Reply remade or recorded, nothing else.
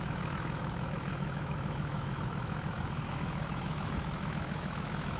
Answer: remade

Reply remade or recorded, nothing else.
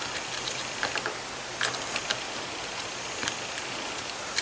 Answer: recorded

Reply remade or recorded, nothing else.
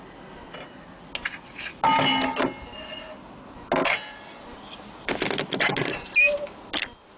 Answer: recorded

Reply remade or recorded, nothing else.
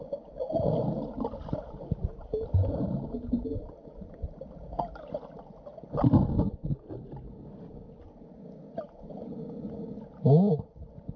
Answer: recorded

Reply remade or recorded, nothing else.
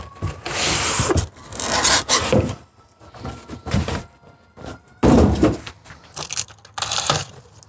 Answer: recorded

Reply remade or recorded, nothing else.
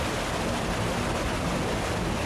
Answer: recorded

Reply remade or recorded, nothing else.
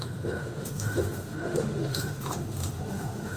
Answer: remade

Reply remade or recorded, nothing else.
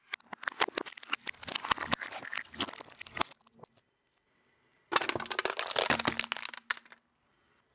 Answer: recorded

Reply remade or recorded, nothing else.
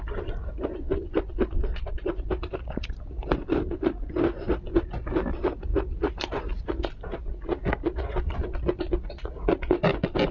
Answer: recorded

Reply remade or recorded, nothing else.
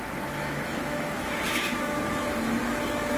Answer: remade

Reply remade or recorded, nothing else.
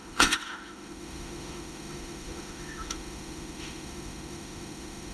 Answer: remade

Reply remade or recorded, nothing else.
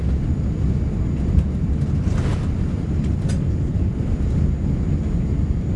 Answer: recorded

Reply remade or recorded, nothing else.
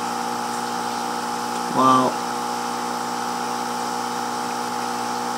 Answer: recorded